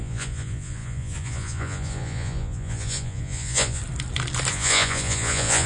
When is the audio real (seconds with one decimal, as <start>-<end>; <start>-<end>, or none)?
3.8-4.5